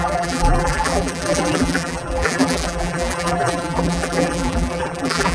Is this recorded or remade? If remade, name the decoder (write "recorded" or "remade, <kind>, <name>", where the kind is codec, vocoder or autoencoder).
remade, vocoder, BigVGAN v2